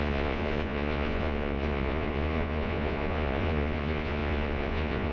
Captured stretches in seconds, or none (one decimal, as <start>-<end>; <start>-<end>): none